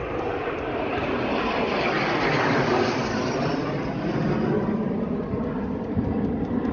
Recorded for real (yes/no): yes